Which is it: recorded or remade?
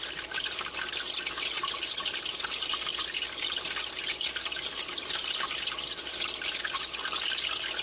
recorded